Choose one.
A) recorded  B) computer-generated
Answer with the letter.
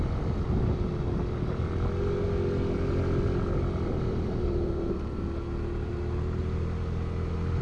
A